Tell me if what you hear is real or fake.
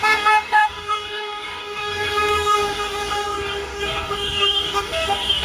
fake